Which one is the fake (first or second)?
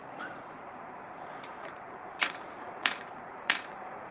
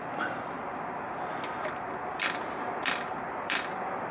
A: first